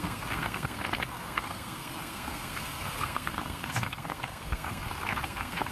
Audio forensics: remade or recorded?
remade